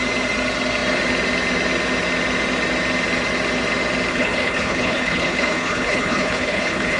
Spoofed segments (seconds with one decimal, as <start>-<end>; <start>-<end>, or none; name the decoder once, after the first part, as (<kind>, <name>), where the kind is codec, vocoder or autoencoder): 4.1-7.0 (codec, HILCodec)